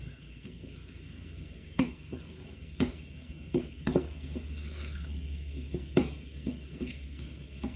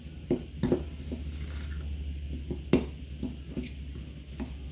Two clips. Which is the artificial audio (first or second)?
first